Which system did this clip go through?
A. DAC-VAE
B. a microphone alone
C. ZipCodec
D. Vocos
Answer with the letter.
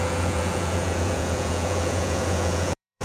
D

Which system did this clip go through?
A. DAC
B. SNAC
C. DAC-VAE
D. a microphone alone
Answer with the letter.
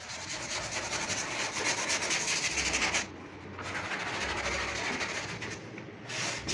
D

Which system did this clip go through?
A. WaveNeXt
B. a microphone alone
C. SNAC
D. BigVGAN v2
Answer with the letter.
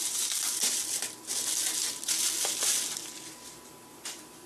B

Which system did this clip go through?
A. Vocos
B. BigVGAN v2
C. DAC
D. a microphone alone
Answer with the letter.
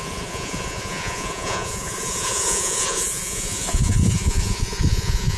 A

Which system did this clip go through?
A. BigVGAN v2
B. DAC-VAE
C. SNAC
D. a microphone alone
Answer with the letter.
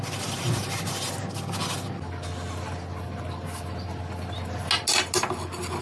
D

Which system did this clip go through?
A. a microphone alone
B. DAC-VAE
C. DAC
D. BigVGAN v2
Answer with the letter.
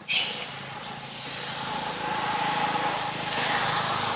A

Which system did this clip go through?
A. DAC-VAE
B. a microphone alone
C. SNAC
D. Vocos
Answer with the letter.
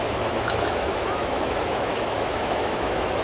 A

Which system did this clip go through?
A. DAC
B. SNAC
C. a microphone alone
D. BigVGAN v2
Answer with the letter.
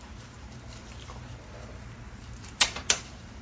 D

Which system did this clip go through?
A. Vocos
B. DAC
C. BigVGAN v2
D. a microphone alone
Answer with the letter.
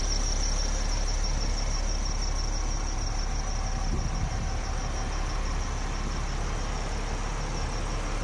D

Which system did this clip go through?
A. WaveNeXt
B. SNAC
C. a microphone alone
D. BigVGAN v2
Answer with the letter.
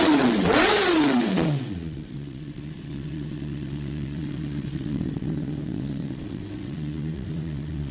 A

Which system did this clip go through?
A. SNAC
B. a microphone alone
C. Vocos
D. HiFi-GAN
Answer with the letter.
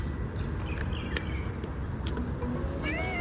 B